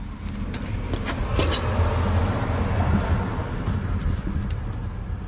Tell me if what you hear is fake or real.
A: real